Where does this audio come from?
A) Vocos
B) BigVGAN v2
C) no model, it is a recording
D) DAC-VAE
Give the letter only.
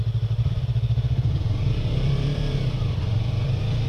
B